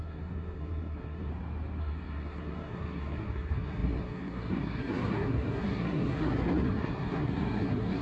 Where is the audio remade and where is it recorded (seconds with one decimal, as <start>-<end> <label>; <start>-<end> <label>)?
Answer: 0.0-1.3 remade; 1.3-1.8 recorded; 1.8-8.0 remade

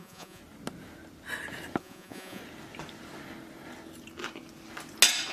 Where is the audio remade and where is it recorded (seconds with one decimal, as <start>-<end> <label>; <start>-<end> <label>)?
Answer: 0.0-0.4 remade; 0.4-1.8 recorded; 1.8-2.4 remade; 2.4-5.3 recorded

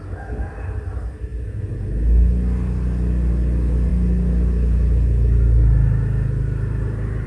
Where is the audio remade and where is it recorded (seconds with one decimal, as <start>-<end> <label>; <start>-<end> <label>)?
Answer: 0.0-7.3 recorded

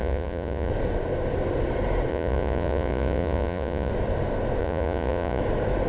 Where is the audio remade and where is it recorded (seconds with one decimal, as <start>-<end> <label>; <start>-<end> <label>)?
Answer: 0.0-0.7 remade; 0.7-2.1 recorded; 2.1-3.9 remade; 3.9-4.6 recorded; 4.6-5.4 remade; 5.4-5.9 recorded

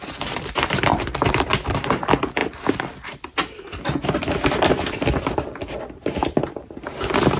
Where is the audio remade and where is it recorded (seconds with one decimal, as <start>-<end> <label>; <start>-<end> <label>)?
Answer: 0.0-0.9 recorded; 0.9-1.5 remade; 1.5-2.4 recorded; 2.4-5.8 remade; 5.8-7.4 recorded